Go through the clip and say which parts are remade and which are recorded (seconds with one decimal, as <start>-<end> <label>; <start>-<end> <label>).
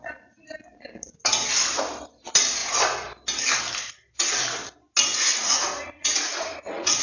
0.0-5.1 recorded; 5.1-7.0 remade